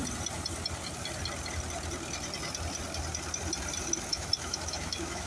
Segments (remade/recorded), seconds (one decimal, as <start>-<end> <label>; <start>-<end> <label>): 0.0-4.1 recorded; 4.1-5.3 remade